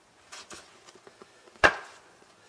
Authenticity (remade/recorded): remade